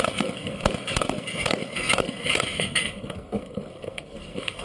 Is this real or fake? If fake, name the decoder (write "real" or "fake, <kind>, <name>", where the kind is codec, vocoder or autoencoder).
fake, codec, SNAC